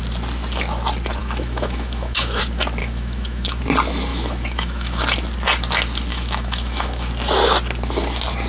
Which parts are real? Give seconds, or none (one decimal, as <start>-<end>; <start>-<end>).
0.0-1.2; 2.4-2.8; 3.6-4.1; 5.0-6.1; 7.1-8.5